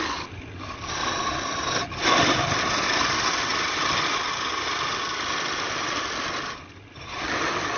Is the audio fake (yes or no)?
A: no